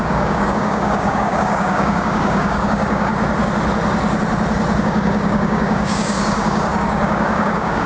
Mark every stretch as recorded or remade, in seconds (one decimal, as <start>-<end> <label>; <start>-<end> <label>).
0.0-3.1 remade; 3.1-4.8 recorded; 4.8-7.9 remade